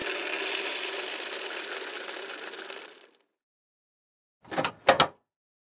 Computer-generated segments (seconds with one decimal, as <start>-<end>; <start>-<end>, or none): none